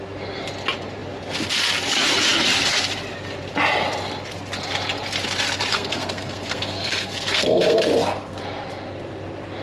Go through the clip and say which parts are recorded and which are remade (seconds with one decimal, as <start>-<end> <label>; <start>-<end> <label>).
0.0-5.7 recorded; 5.7-8.4 remade; 8.4-9.6 recorded